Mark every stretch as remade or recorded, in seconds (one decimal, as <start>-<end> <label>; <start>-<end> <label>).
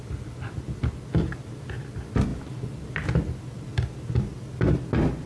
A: 0.0-5.3 recorded